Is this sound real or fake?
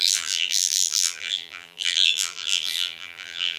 fake